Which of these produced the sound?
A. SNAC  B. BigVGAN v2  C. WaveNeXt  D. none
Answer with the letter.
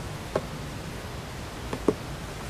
D